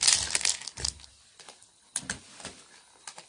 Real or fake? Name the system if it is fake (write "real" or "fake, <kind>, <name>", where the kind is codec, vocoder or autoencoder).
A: real